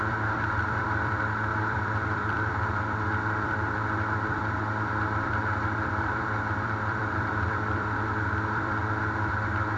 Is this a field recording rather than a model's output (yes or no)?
no